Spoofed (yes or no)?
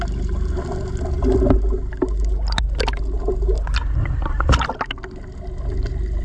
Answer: no